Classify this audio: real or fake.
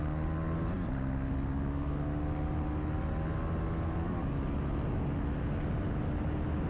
real